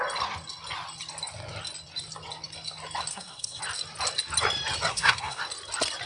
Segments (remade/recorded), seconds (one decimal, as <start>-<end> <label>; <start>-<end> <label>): 0.0-3.1 recorded; 3.1-3.6 remade; 3.6-4.9 recorded; 4.9-5.4 remade; 5.4-6.1 recorded